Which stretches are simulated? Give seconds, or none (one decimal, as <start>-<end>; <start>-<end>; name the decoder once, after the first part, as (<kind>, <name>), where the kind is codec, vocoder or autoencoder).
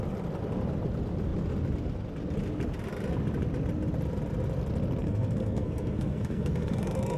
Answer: 5.0-7.2 (codec, SNAC)